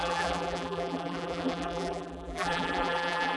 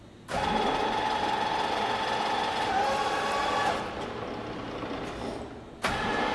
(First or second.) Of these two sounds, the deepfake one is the first